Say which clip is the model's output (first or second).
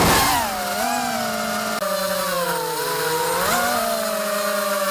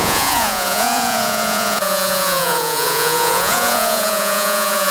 second